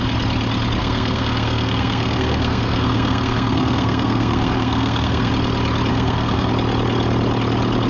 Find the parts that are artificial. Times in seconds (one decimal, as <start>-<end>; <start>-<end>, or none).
0.8-5.3; 5.9-6.5